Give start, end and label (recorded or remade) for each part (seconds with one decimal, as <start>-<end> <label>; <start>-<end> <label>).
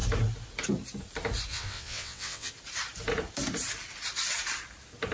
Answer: 0.0-1.5 recorded; 1.5-2.5 remade; 2.5-5.1 recorded